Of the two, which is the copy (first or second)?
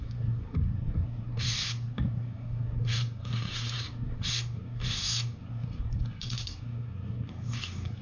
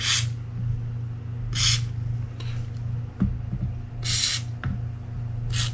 first